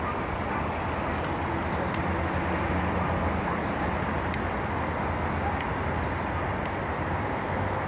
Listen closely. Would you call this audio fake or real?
real